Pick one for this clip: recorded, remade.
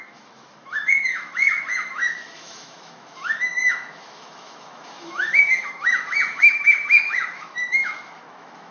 remade